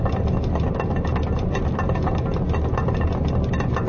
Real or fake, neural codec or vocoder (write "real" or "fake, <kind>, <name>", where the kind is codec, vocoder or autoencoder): real